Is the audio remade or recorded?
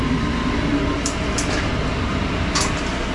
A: recorded